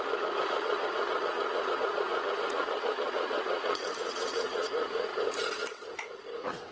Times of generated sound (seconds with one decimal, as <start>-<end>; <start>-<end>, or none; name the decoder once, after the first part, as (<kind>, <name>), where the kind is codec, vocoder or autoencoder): 0.0-5.1 (vocoder, Vocos); 5.9-6.7

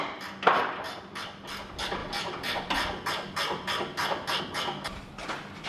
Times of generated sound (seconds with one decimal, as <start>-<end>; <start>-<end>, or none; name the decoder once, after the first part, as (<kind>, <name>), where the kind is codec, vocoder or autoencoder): none

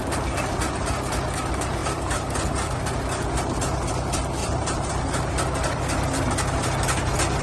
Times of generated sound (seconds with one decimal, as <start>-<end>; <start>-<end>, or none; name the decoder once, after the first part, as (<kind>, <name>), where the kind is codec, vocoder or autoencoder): 1.8-2.5 (vocoder, BigVGAN v2); 4.4-4.9

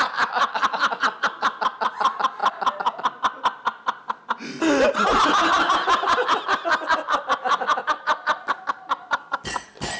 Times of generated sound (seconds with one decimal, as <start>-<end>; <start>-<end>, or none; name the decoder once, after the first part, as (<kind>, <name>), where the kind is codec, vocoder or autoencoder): none